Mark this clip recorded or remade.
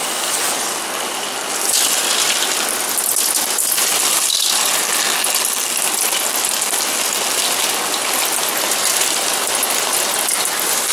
recorded